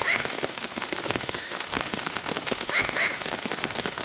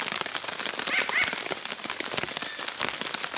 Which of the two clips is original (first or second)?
second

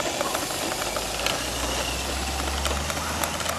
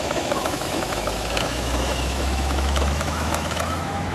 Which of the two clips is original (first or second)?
first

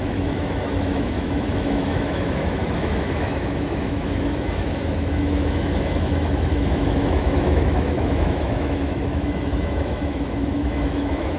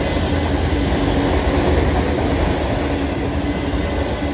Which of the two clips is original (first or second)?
second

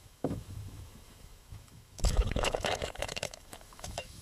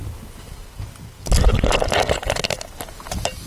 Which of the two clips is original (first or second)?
second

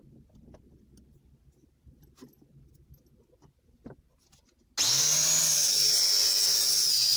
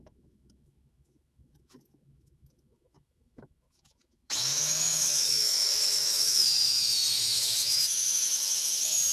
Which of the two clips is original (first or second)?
first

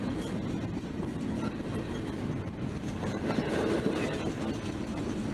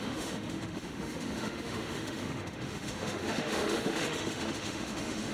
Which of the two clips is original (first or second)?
first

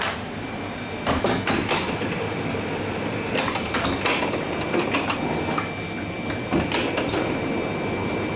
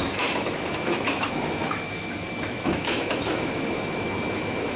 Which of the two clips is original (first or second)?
first